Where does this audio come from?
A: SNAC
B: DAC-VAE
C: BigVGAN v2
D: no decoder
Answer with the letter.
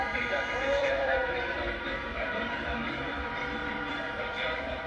C